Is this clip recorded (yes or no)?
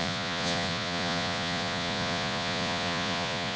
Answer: no